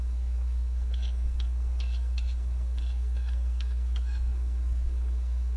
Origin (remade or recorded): remade